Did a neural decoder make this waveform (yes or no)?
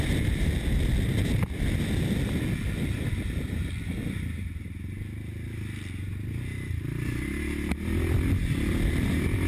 no